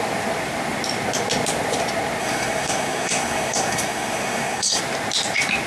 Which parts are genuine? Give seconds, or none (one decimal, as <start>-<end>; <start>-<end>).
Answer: 0.0-2.2; 4.8-5.7